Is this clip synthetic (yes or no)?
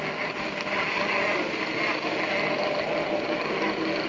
no